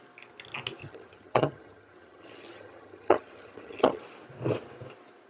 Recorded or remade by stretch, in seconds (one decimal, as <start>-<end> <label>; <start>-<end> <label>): 0.0-0.8 recorded; 0.8-4.0 remade; 4.0-5.3 recorded